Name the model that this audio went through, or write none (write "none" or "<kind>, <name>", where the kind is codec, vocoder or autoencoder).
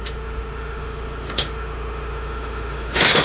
autoencoder, DAC-VAE